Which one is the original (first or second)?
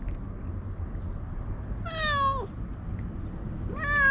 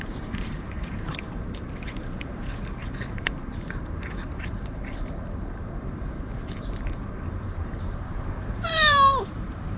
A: first